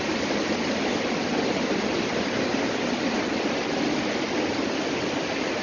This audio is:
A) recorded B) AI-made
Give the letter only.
A